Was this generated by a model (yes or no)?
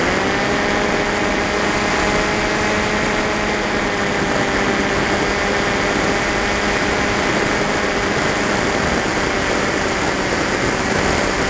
no